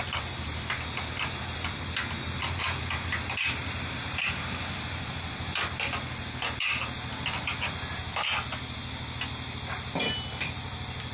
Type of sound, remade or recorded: recorded